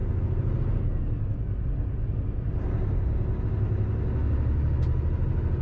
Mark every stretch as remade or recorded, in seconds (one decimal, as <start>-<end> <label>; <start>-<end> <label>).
0.0-5.6 recorded